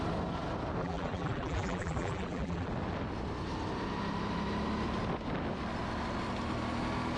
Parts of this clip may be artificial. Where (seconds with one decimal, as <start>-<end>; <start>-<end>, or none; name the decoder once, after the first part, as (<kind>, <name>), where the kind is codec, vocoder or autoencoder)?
0.8-2.7 (vocoder, BigVGAN v2)

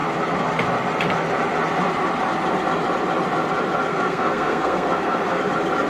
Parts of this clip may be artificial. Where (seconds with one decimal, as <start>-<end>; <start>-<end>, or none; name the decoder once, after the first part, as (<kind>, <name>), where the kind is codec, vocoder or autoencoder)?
3.9-5.4 (codec, SNAC)

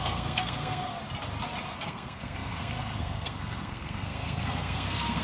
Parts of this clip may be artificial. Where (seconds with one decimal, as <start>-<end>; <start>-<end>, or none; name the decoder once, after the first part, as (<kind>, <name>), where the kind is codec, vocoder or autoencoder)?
0.0-0.9 (codec, SNAC); 1.7-5.2

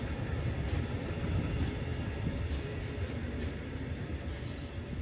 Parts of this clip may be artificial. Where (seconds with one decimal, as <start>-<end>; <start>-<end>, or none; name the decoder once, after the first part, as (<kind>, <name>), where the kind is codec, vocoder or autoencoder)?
none

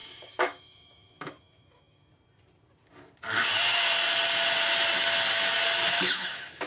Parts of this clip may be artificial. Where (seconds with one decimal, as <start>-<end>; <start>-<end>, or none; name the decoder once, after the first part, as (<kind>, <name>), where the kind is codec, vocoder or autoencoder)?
0.0-2.1 (autoencoder, DAC-VAE); 6.1-6.7

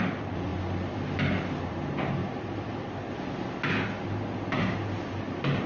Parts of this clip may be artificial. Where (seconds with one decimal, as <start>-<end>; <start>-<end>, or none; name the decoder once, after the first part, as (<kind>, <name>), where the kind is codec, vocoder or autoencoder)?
none

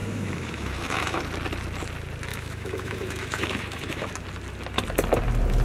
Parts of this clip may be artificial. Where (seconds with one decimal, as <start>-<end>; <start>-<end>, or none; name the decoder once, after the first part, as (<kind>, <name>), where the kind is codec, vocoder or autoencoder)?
0.0-1.2 (autoencoder, DAC-VAE); 2.3-4.1

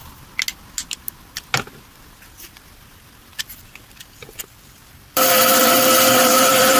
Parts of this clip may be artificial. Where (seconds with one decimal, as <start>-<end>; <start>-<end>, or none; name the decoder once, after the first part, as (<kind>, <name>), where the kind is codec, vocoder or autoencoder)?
3.3-6.8 (vocoder, BigVGAN v2)